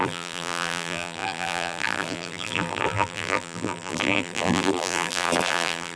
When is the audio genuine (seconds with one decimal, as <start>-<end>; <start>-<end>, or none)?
none